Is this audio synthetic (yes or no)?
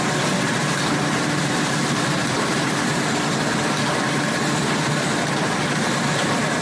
no